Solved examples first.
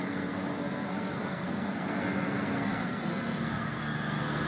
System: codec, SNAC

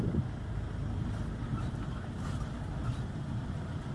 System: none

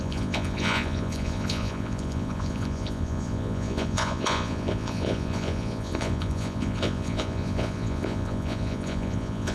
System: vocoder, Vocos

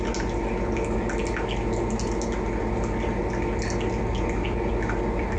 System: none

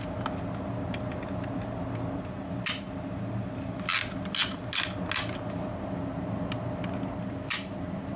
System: none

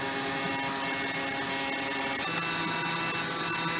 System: none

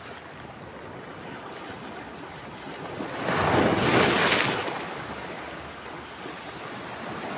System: none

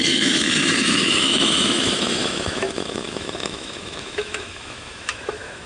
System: autoencoder, DAC-VAE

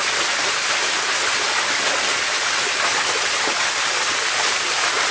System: none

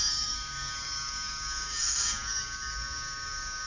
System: codec, DAC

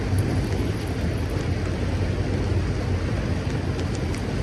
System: none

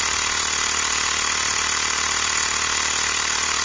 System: none